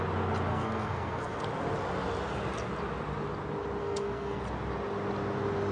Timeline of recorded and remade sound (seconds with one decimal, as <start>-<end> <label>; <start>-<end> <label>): 0.0-0.5 recorded; 0.5-1.4 remade; 1.4-3.8 recorded; 3.8-4.4 remade; 4.4-5.7 recorded